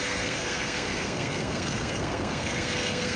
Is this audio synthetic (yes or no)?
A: yes